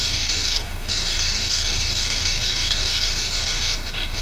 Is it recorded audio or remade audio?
remade